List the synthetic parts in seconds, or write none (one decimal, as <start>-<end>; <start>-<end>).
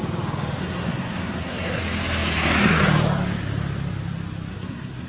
0.6-1.8; 4.5-5.1